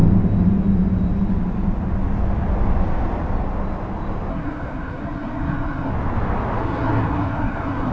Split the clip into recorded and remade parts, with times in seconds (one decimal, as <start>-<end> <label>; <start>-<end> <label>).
0.0-4.3 recorded; 4.3-5.9 remade; 5.9-6.6 recorded; 6.6-7.9 remade